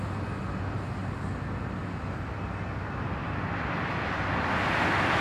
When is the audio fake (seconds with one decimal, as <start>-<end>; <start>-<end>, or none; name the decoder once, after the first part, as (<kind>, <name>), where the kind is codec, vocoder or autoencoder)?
none